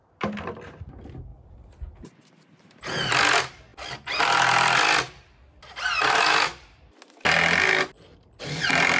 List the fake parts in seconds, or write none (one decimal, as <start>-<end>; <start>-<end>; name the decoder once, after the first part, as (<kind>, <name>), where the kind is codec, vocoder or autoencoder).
none